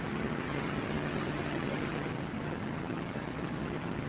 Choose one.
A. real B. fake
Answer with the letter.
B